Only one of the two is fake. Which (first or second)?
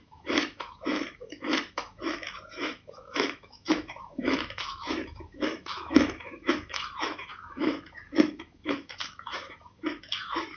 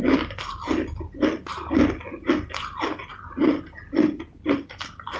first